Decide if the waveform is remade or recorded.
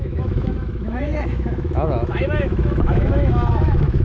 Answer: remade